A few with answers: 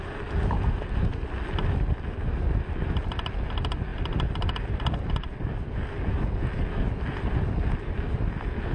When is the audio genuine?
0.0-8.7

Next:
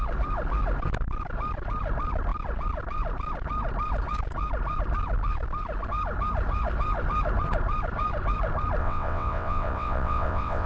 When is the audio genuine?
0.0-8.8

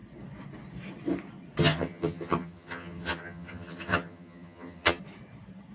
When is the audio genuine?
0.0-1.6; 5.0-5.7

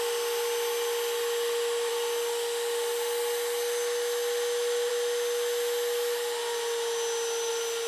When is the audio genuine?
0.0-7.9